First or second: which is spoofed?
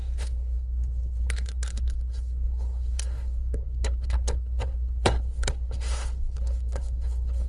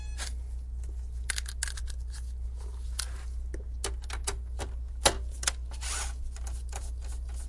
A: first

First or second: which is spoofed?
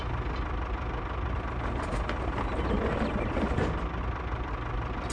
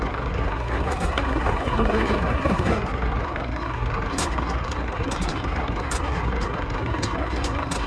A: second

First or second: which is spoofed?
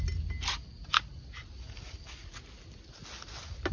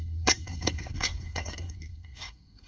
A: second